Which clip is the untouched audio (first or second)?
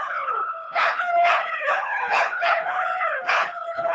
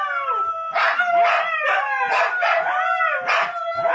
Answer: second